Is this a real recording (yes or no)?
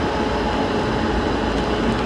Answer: yes